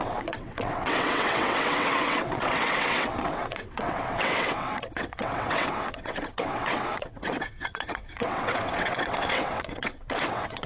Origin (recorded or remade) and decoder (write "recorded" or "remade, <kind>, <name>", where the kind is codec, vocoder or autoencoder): remade, vocoder, WaveNeXt